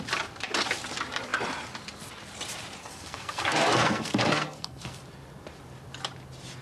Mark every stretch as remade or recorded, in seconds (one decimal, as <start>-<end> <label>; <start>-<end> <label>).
0.0-2.8 recorded; 2.8-5.0 remade; 5.0-6.6 recorded